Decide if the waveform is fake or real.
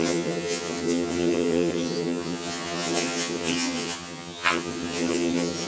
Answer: fake